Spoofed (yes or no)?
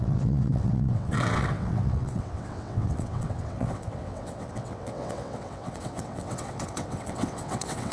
yes